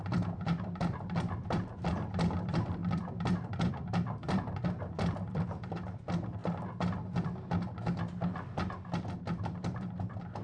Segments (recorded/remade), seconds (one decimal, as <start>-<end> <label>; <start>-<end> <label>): 0.0-6.4 remade; 6.4-9.2 recorded; 9.2-10.4 remade